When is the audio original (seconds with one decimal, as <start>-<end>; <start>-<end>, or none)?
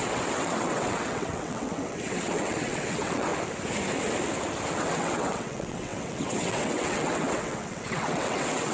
3.3-4.7